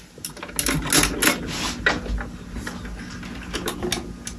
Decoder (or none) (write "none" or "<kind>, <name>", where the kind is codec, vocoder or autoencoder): none